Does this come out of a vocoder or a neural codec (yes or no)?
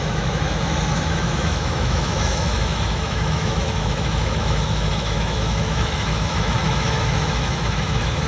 yes